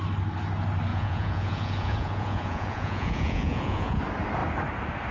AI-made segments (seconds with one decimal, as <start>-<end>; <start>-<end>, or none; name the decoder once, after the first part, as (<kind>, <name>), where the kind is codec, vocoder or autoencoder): 0.9-4.0 (vocoder, Vocos)